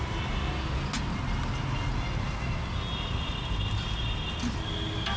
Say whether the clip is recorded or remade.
recorded